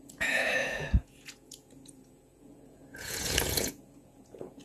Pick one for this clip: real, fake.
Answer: fake